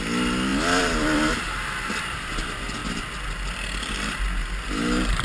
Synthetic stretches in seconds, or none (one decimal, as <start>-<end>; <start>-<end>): none